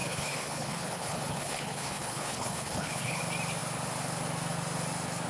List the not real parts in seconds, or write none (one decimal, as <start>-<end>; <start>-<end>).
0.0-3.2